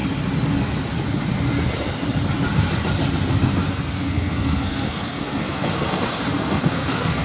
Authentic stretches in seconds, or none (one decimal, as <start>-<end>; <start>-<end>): 0.0-3.7